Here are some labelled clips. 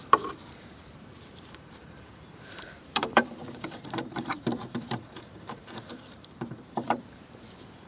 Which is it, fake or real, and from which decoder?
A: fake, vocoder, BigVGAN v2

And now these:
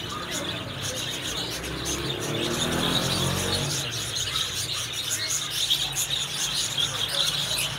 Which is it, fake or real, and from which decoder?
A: real